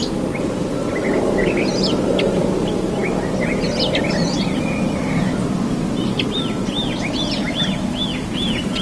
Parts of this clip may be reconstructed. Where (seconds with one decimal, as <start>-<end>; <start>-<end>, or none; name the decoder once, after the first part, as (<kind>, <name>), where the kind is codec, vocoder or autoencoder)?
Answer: none